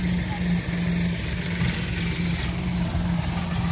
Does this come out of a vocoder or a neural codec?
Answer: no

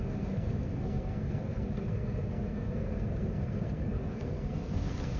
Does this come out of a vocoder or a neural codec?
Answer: yes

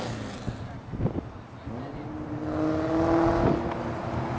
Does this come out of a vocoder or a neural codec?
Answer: no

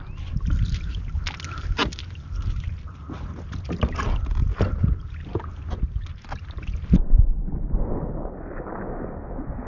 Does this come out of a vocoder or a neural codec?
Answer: no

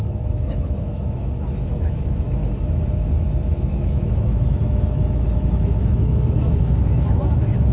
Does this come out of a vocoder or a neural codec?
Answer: yes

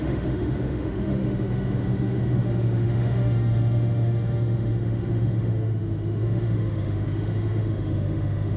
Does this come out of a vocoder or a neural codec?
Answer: yes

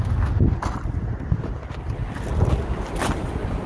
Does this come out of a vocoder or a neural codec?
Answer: no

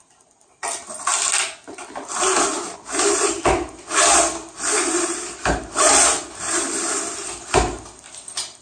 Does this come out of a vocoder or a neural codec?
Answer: no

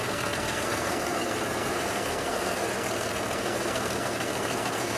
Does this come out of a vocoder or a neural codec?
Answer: yes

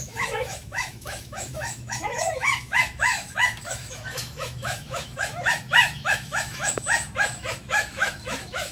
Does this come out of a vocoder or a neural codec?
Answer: yes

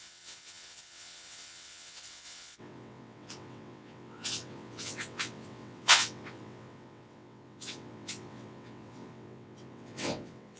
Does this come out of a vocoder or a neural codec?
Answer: yes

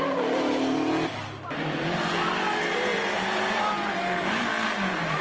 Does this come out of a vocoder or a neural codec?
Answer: no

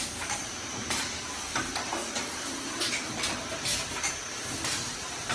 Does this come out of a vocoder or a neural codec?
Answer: yes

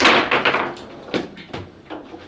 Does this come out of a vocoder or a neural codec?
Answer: no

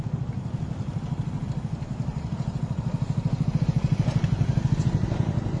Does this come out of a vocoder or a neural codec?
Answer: no